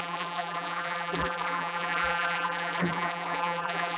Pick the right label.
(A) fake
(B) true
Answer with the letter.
A